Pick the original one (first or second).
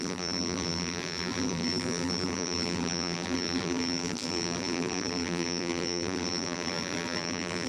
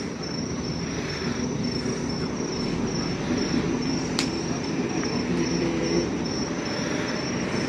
second